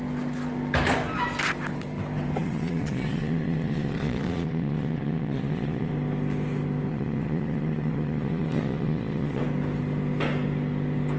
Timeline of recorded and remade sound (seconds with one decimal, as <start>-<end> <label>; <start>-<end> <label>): 0.0-2.4 recorded; 2.4-5.9 remade; 5.9-6.9 recorded; 6.9-9.4 remade; 9.4-11.2 recorded